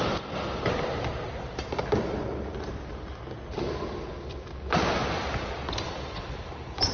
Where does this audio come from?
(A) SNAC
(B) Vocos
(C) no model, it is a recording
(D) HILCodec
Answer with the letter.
C